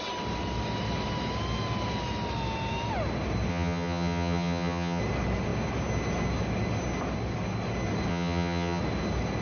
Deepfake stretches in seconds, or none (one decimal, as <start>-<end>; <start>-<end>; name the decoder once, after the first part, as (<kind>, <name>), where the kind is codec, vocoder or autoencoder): 3.5-5.0 (vocoder, HiFi-GAN); 8.1-8.8